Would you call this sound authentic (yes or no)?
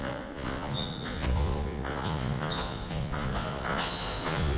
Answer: no